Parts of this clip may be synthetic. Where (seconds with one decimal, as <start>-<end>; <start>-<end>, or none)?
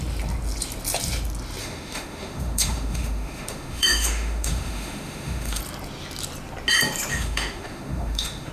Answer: 1.6-5.6; 7.1-8.5